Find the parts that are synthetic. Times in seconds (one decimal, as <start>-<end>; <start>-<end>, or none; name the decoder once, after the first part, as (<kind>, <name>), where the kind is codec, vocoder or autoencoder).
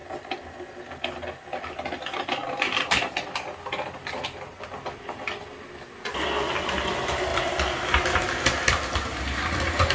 none